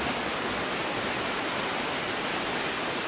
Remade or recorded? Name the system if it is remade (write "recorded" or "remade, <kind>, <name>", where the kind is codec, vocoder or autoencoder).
recorded